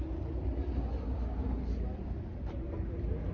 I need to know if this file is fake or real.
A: real